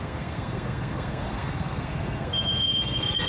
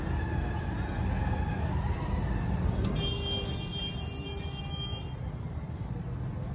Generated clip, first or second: first